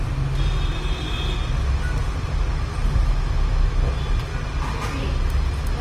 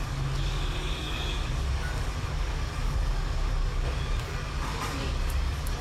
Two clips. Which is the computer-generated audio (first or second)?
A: second